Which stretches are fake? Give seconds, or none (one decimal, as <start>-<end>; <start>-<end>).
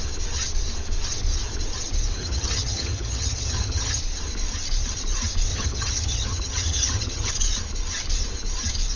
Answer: 2.2-4.0; 5.5-7.3